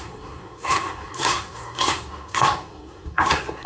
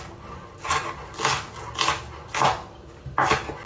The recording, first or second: second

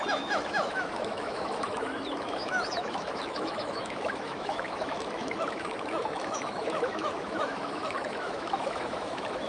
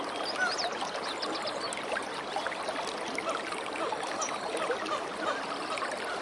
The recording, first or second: second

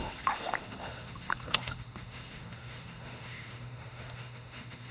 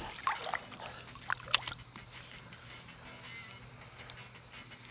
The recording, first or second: second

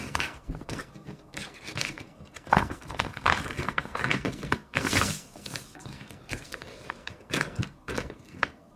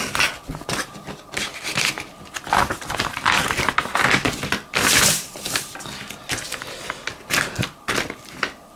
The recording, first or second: second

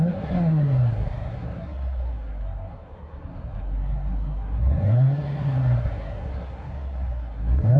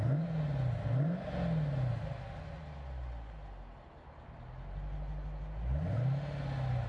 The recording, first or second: second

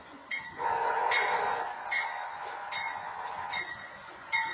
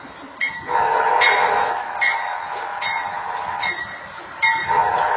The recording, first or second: second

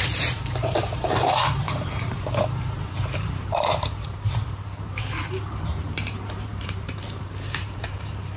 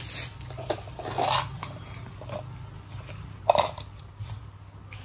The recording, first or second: second